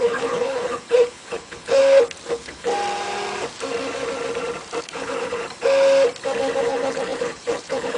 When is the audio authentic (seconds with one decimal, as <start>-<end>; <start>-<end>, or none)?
1.8-2.3; 2.7-4.8; 5.4-6.6